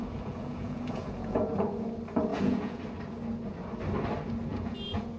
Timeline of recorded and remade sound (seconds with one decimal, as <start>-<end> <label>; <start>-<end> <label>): 0.0-1.9 remade; 1.9-2.3 recorded; 2.3-2.8 remade; 2.8-4.5 recorded; 4.5-5.2 remade